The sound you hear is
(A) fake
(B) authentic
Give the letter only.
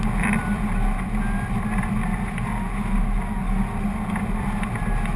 B